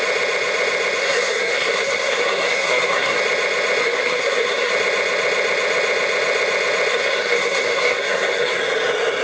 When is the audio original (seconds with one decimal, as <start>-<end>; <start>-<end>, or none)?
0.0-1.0; 3.2-3.8; 4.7-6.9; 8.6-9.2